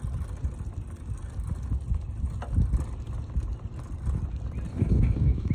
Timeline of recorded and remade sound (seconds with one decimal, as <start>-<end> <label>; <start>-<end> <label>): 0.0-4.7 recorded; 4.7-5.5 remade